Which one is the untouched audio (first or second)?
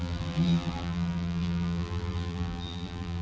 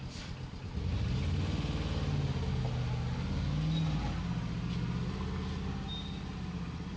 second